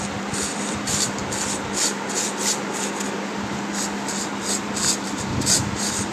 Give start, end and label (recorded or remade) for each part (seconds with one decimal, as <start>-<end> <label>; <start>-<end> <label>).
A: 0.0-1.2 remade; 1.2-4.9 recorded; 4.9-6.1 remade